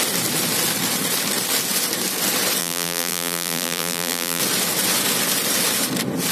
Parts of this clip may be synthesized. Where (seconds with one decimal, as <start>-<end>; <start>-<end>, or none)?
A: 2.6-4.4